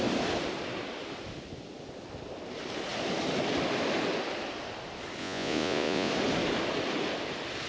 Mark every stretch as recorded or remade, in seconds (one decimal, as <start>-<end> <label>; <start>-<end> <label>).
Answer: 0.0-5.2 recorded; 5.2-6.1 remade; 6.1-7.7 recorded